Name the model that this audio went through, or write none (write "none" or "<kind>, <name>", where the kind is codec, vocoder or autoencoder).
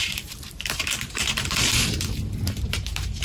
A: vocoder, BigVGAN v2